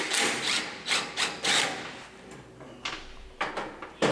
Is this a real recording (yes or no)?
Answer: yes